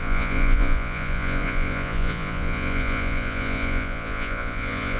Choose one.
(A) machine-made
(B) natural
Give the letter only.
A